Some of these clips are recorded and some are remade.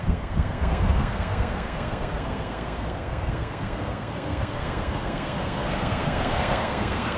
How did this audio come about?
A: remade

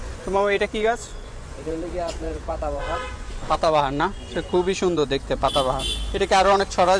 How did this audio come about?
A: remade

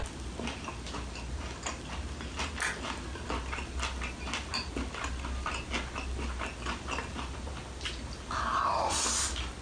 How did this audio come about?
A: recorded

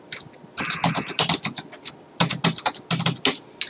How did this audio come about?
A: recorded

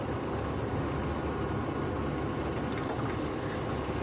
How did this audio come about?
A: recorded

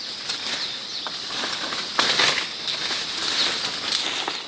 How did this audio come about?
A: recorded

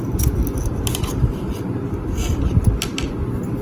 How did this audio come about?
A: recorded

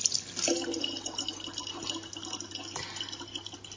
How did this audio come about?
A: recorded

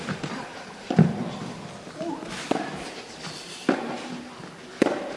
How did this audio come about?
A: recorded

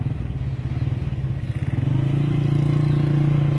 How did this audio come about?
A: recorded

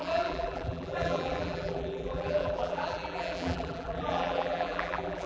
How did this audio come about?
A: remade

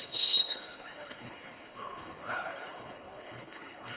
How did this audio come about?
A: remade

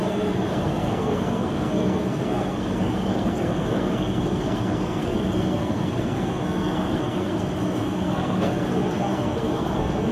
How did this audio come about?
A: remade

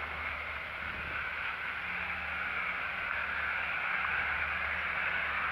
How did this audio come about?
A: recorded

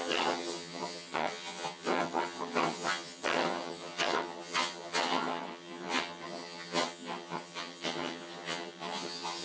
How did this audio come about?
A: remade